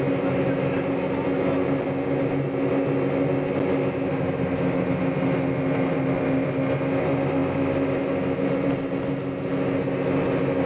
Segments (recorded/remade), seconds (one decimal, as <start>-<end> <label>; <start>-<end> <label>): 0.0-10.7 recorded